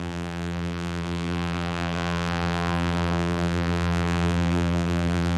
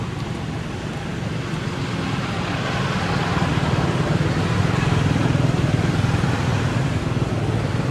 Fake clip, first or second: first